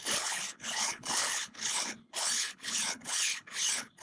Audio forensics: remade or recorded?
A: remade